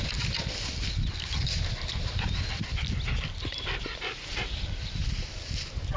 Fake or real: real